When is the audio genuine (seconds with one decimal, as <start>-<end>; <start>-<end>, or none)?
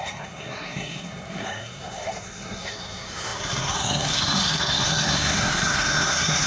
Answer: none